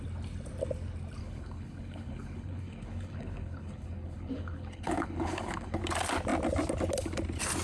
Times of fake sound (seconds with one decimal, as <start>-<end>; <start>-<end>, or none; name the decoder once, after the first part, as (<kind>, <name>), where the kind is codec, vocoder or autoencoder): 1.2-5.8 (codec, HILCodec)